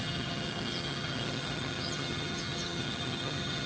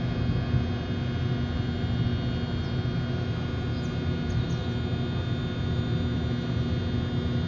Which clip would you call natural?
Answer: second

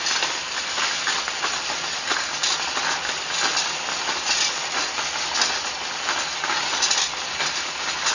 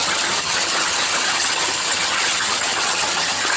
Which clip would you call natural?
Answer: first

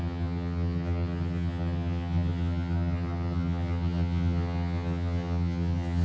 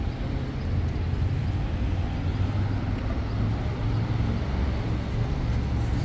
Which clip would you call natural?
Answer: second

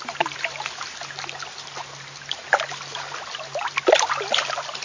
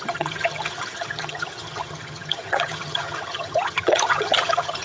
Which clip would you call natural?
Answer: first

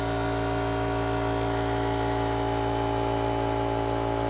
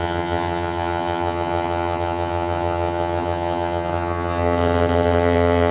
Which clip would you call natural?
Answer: first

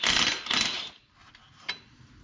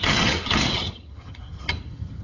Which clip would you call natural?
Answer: first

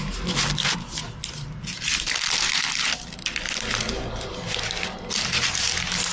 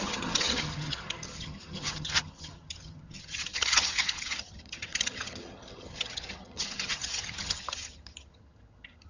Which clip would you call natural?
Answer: first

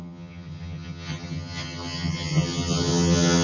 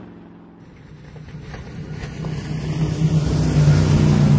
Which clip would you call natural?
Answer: second